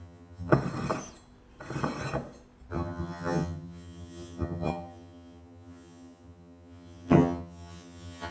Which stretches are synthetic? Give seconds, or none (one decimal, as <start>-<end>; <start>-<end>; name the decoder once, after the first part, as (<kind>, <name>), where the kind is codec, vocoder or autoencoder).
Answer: 0.0-0.5 (vocoder, HiFi-GAN); 2.7-8.3